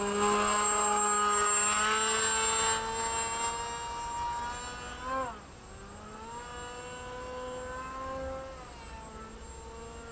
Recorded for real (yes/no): yes